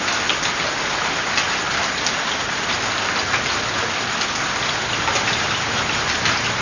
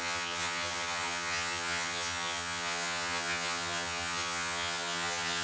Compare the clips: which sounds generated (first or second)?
second